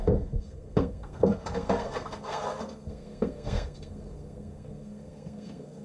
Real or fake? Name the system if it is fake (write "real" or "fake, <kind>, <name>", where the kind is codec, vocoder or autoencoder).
fake, codec, SNAC